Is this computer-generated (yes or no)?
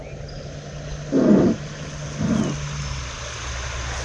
no